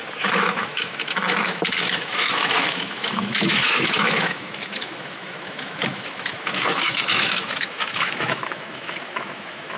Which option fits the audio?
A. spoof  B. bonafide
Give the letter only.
A